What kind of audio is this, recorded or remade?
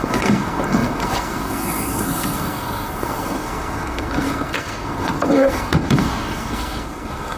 remade